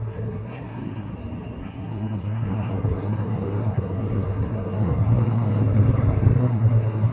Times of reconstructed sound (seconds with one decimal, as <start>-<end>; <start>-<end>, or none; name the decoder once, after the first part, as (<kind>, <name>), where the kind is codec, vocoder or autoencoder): 0.0-1.1 (codec, SNAC); 1.6-7.1